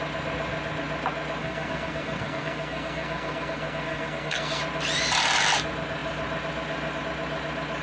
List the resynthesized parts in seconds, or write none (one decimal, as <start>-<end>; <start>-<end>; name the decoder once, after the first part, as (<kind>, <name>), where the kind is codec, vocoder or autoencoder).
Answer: 1.4-4.6 (codec, SNAC)